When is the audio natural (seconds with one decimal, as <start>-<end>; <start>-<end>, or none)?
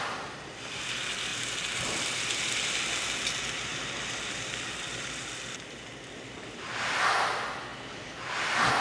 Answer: 0.0-8.8